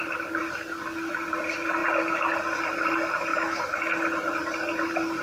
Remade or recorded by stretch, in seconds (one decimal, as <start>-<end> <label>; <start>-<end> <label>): 0.0-3.3 recorded; 3.3-4.0 remade; 4.0-5.2 recorded